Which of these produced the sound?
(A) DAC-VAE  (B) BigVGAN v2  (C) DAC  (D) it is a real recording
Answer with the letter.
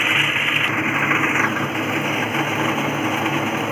D